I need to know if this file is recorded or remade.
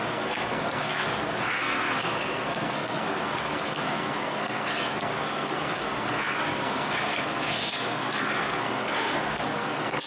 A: remade